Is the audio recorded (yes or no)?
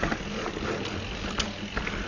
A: yes